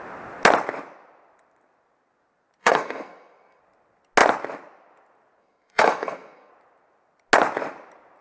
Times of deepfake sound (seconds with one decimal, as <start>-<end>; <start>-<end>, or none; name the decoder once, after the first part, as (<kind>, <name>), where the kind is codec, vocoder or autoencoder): 2.6-3.6 (codec, SNAC); 5.4-6.5

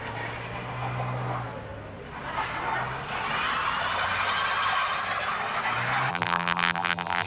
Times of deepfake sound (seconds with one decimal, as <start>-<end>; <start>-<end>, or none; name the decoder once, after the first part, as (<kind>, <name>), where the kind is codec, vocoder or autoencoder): 6.1-7.3 (vocoder, BigVGAN v2)

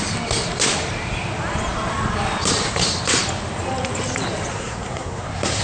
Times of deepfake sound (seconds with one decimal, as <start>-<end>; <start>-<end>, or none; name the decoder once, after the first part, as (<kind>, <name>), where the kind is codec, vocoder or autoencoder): 4.5-5.6 (codec, SNAC)

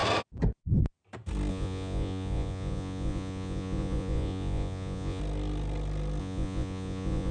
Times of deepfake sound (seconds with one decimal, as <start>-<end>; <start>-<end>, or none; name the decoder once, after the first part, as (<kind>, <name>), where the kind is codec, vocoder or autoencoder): 1.5-5.2 (vocoder, Vocos); 6.2-7.3

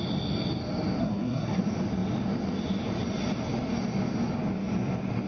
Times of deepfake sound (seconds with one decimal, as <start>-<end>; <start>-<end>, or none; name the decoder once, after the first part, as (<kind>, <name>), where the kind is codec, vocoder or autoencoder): 1.0-1.6 (codec, SNAC)

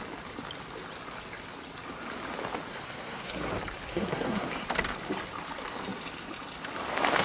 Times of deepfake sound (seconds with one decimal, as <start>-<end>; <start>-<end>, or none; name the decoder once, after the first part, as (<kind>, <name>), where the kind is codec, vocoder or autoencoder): 2.7-3.5 (codec, SNAC); 3.9-4.5

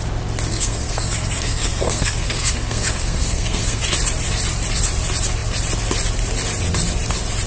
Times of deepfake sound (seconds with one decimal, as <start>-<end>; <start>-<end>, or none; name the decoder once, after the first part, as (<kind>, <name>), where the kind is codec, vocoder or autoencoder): 0.5-3.8 (codec, SNAC)

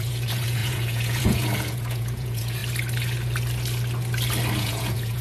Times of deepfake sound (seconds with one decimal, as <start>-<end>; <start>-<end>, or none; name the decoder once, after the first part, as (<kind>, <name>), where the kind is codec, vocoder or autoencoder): 0.0-2.6 (vocoder, Vocos); 4.6-5.2